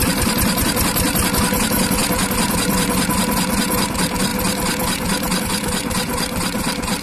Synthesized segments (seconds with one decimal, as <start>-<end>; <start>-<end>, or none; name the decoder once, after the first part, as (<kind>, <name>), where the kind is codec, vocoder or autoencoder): none